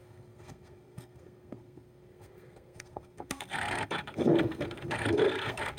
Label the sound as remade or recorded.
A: remade